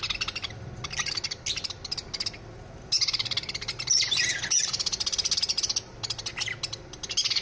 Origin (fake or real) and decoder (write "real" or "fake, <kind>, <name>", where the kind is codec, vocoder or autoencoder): real